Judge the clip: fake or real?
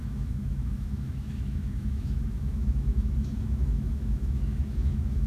fake